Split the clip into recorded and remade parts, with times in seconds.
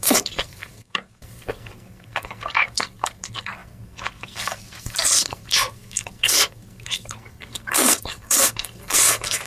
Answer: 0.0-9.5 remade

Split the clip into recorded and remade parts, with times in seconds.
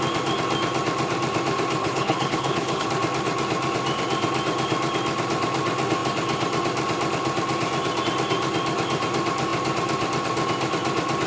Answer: 0.0-1.8 recorded; 1.8-2.9 remade; 2.9-11.3 recorded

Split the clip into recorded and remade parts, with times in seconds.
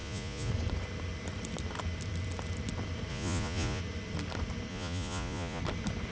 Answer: 0.0-0.5 remade; 0.5-3.1 recorded; 3.1-3.8 remade; 3.8-4.7 recorded; 4.7-5.6 remade; 5.6-6.1 recorded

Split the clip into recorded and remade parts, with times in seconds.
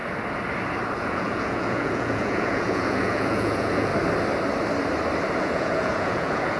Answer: 0.0-1.0 recorded; 1.0-3.9 remade; 3.9-5.4 recorded; 5.4-6.6 remade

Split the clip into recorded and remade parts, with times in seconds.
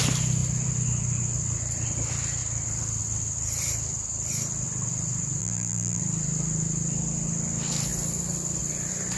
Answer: 0.0-5.4 recorded; 5.4-6.0 remade; 6.0-9.2 recorded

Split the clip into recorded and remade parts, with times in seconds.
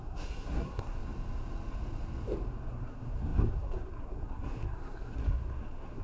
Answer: 0.0-1.0 remade; 1.0-2.7 recorded; 2.7-6.0 remade